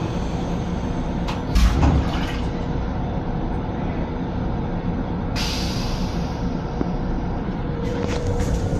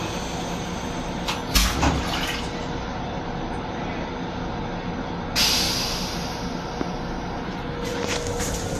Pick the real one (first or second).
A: second